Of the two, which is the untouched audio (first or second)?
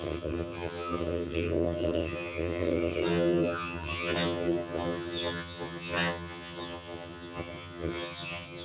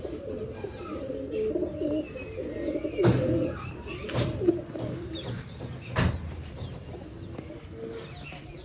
second